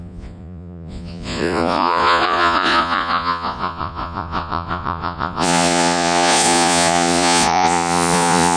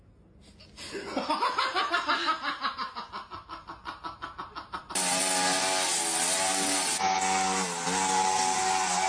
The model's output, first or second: first